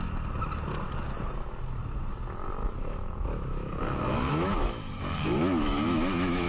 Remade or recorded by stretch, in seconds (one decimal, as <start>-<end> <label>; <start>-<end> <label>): 0.0-2.6 recorded; 2.6-6.5 remade